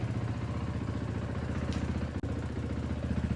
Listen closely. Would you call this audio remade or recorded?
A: recorded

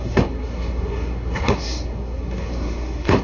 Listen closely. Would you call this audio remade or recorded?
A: remade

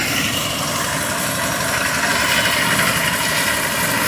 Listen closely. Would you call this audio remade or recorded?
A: recorded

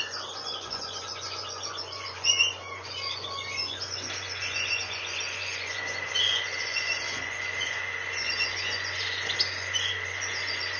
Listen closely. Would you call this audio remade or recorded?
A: remade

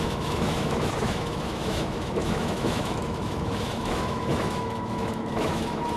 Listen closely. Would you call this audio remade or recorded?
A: remade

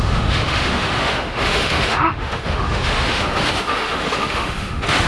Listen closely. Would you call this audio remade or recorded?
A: remade